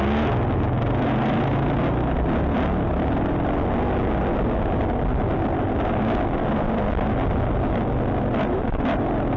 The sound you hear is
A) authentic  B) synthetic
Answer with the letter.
A